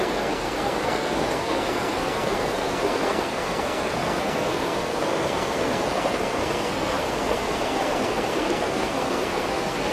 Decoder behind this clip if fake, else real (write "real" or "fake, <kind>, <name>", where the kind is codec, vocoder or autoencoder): fake, codec, SNAC